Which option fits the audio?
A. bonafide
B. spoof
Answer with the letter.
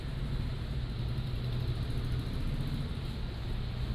A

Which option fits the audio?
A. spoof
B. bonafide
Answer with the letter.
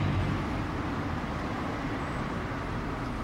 B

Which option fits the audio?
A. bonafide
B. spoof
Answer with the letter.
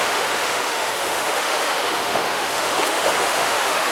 B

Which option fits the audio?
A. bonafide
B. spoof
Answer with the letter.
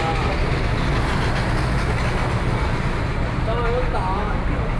A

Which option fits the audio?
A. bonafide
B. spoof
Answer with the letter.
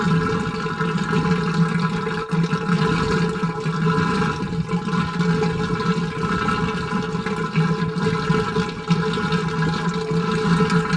A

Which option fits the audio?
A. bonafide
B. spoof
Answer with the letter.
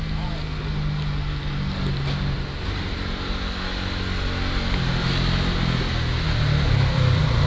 A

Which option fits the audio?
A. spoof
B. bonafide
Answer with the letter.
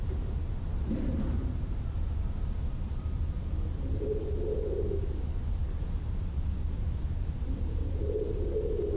A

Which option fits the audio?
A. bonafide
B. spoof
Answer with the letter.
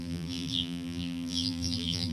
B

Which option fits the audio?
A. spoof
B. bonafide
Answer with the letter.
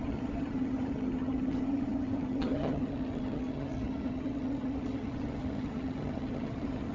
A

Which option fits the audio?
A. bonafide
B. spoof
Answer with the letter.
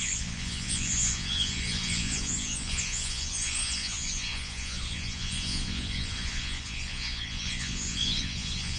B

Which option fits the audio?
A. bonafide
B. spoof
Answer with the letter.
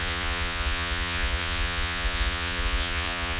B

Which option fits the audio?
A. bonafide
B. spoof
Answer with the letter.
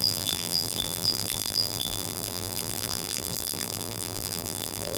B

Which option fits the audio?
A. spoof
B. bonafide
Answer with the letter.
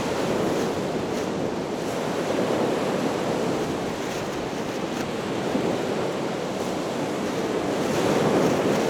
B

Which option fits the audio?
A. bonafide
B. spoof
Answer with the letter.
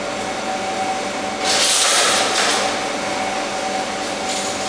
A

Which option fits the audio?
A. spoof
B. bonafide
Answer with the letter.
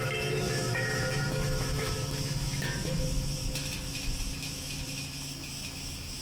A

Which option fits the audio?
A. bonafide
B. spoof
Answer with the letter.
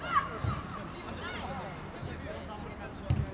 A